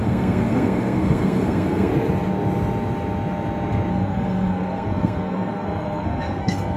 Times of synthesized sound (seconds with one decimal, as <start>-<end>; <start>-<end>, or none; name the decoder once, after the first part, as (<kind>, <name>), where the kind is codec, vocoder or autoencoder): 0.0-1.9 (codec, SNAC); 3.9-6.8

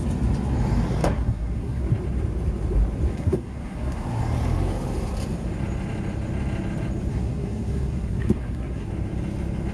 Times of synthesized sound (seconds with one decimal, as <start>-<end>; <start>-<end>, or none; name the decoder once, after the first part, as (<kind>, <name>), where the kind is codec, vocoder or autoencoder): 1.0-1.9 (codec, SNAC); 3.1-4.2; 7.1-8.9

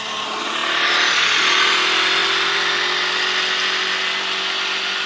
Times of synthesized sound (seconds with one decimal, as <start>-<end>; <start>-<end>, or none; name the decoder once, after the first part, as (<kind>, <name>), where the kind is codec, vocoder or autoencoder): none

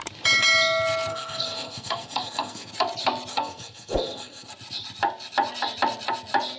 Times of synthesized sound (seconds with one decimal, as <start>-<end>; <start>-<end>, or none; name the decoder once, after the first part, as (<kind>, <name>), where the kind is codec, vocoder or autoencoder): 1.1-2.7 (codec, SNAC); 3.3-4.5

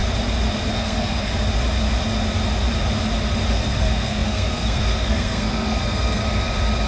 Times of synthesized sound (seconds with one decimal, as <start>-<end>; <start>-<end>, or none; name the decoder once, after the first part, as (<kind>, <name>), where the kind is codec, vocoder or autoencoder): 0.7-1.3 (codec, SNAC); 3.5-6.2

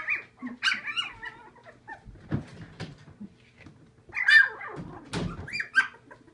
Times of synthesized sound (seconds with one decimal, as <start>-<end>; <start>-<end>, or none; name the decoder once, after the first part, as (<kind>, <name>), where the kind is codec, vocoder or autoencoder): none

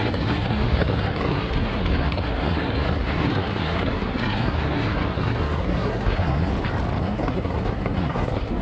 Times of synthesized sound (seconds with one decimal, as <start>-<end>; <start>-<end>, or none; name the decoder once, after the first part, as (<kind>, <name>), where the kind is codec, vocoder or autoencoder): 0.0-6.5 (codec, SNAC); 7.0-8.6